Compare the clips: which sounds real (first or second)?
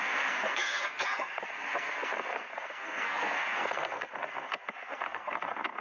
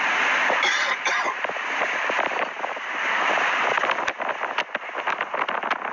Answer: second